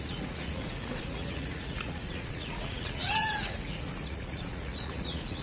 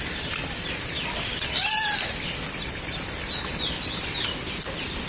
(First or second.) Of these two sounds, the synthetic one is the first